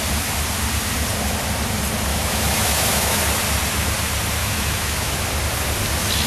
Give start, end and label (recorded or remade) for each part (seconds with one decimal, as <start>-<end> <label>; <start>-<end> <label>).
0.0-2.1 recorded; 2.1-3.2 remade; 3.2-4.4 recorded; 4.4-5.2 remade; 5.2-6.3 recorded